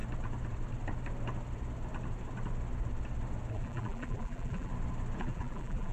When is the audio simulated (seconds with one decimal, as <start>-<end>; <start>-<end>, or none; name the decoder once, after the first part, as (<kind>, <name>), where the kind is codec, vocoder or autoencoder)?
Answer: 3.5-4.7 (vocoder, BigVGAN v2); 5.2-5.9